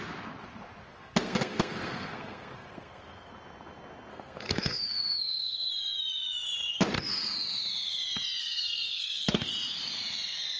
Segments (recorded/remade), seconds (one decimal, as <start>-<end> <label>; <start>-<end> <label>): 0.0-0.9 recorded; 0.9-3.3 remade; 3.3-4.1 recorded; 4.1-5.7 remade; 5.7-8.4 recorded; 8.4-9.5 remade; 9.5-10.6 recorded